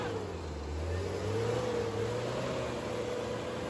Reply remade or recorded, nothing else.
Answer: recorded